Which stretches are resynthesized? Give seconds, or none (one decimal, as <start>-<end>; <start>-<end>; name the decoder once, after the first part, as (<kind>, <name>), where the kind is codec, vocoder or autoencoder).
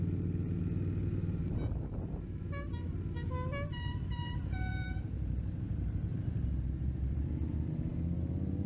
1.1-2.8 (vocoder, BigVGAN v2); 4.7-7.3